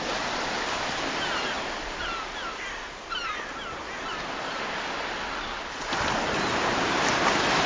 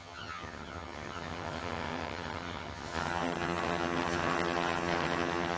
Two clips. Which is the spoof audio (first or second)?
second